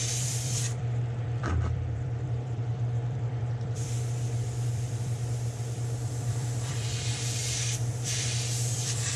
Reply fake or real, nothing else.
fake